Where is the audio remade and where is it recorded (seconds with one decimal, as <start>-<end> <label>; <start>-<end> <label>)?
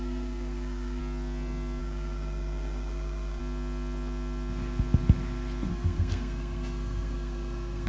0.0-1.0 remade; 1.0-1.8 recorded; 1.8-3.4 remade; 3.4-5.7 recorded; 5.7-7.9 remade